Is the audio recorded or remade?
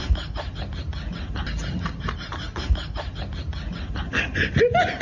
recorded